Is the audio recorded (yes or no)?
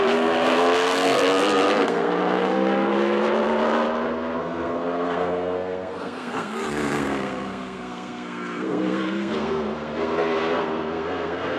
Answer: no